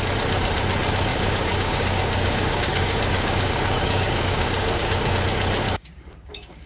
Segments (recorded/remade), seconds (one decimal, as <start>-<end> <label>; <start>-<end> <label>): 0.0-1.1 recorded; 1.1-5.1 remade; 5.1-5.6 recorded; 5.6-6.7 remade